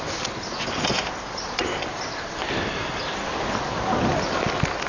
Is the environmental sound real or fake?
real